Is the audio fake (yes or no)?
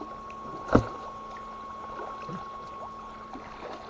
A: no